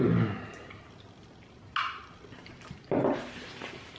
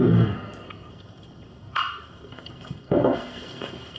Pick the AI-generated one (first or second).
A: second